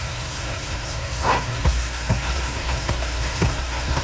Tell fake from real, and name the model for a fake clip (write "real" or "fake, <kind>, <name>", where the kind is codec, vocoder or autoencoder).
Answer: fake, codec, SNAC